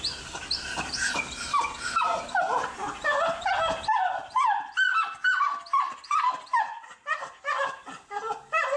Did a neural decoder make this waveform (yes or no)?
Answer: no